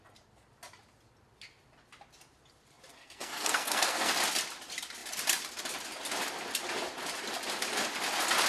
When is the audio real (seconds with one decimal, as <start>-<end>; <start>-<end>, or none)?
0.0-2.9; 4.1-8.5